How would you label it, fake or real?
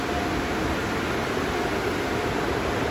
real